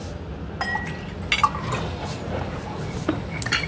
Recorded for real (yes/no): yes